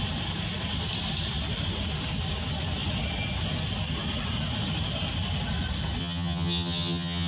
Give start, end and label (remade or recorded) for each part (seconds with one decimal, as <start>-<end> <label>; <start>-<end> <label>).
0.0-6.0 recorded; 6.0-7.3 remade